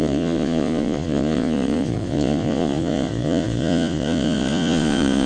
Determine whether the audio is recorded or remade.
remade